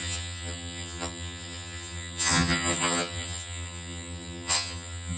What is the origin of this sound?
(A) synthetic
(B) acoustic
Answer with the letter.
A